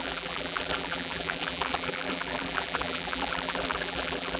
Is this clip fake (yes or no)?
yes